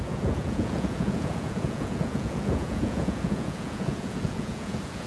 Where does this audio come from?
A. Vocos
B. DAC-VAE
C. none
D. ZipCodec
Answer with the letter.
A